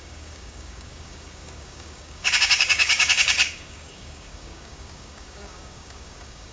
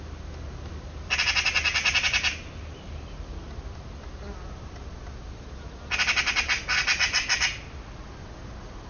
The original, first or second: second